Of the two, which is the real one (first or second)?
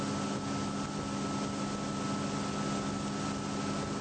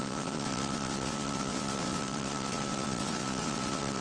first